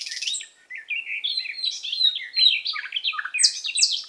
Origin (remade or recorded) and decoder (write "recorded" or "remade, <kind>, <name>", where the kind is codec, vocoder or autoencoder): recorded